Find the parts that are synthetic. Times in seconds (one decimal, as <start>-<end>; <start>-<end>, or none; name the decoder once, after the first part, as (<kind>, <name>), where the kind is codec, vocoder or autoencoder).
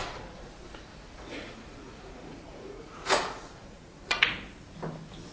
0.9-4.1 (vocoder, Vocos)